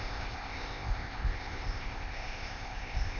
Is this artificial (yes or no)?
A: yes